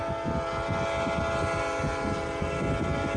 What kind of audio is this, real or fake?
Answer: real